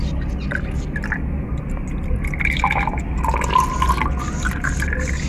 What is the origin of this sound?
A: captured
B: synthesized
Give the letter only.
A